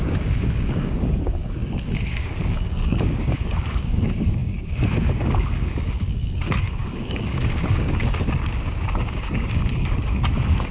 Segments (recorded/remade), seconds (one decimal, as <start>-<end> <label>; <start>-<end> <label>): 0.0-10.7 remade